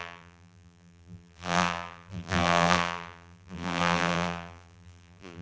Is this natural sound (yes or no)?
no